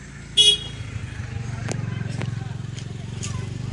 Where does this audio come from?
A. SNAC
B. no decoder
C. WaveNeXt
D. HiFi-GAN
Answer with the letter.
B